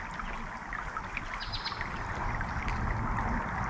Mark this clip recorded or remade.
recorded